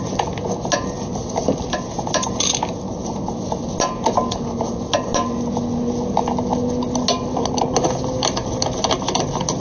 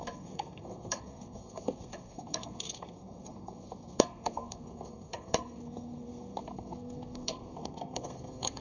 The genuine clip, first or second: first